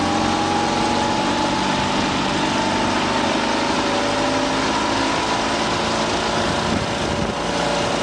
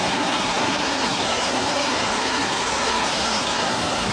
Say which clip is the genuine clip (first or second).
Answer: first